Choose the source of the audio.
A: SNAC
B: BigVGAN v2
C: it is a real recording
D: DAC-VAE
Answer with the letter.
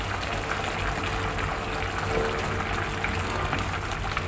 C